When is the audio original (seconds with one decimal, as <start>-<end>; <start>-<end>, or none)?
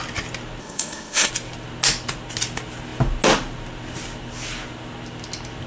0.0-0.6; 1.3-5.7